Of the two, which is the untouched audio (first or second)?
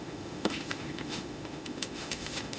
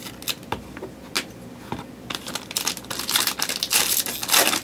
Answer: second